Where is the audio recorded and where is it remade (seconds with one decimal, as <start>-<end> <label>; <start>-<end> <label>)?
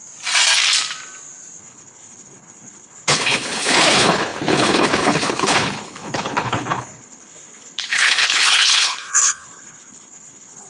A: 0.0-1.6 recorded; 1.6-10.7 remade